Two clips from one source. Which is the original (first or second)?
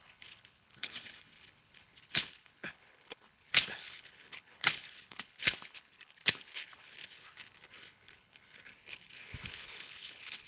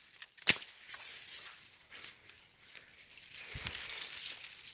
second